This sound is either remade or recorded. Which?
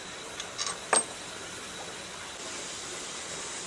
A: recorded